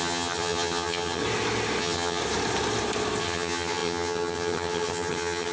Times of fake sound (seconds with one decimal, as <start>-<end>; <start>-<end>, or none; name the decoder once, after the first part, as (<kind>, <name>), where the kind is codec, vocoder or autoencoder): 0.0-1.2 (vocoder, HiFi-GAN); 1.8-2.2; 3.2-5.5

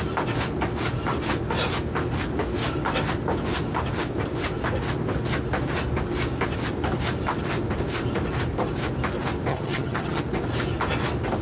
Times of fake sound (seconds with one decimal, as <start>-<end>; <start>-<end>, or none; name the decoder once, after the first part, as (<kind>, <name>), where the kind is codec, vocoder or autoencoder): 9.5-10.2 (vocoder, HiFi-GAN)

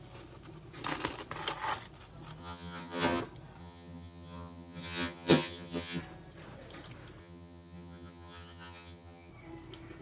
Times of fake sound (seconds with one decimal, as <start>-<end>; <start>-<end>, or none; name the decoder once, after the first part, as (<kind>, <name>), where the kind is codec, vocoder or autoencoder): 2.4-3.2 (vocoder, HiFi-GAN); 3.6-6.0; 7.2-9.3

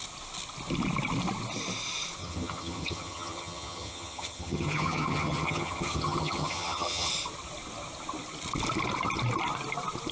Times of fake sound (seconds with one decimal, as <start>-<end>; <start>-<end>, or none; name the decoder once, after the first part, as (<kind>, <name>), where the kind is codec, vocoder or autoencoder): 2.2-7.1 (vocoder, HiFi-GAN)